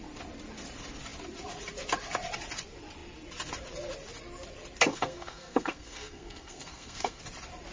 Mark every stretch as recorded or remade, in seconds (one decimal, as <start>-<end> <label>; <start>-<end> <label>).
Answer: 0.0-4.9 recorded; 4.9-7.2 remade; 7.2-7.7 recorded